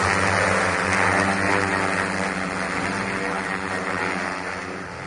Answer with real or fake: real